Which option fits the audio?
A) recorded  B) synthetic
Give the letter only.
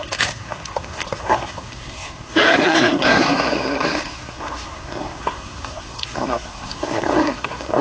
B